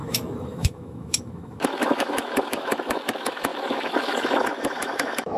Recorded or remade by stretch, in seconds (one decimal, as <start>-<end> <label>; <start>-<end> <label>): 0.0-5.4 remade